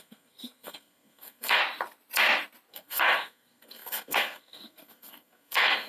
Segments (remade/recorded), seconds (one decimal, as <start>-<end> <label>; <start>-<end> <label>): 0.0-1.6 remade; 1.6-2.7 recorded; 2.7-5.9 remade